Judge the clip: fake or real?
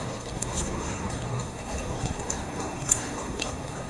fake